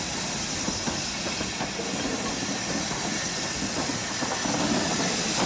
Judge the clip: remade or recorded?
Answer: recorded